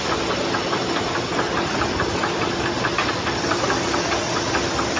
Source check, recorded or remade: recorded